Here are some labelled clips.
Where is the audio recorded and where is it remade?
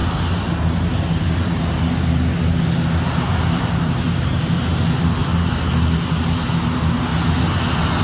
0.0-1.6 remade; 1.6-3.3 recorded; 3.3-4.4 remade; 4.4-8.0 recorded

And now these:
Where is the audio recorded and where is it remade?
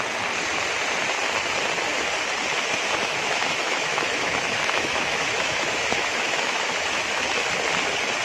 0.0-3.0 recorded; 3.0-7.5 remade; 7.5-8.2 recorded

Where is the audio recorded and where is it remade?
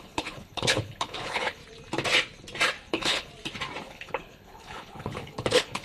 0.0-1.6 remade; 1.6-2.9 recorded; 2.9-3.3 remade; 3.3-3.8 recorded; 3.8-5.8 remade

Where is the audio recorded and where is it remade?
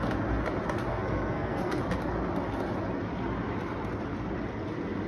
0.0-0.9 recorded; 0.9-1.8 remade; 1.8-5.1 recorded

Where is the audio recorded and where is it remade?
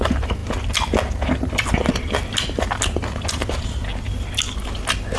0.0-5.2 recorded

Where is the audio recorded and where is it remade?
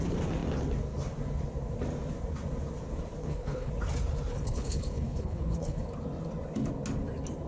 0.0-3.2 recorded; 3.2-3.7 remade; 3.7-4.3 recorded; 4.3-5.8 remade; 5.8-7.5 recorded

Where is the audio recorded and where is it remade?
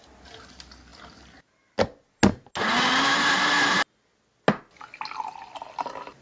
0.0-6.2 recorded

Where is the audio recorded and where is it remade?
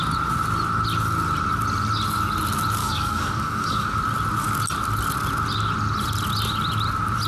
0.0-2.8 recorded; 2.8-4.0 remade; 4.0-7.3 recorded